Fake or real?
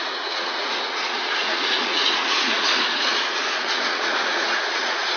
fake